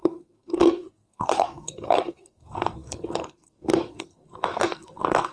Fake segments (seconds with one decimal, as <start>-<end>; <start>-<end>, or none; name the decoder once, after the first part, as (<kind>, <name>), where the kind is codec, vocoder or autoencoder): 0.0-5.3 (codec, SNAC)

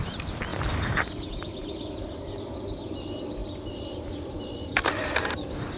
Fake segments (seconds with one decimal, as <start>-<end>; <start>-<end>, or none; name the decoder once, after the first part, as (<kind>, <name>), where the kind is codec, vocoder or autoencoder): none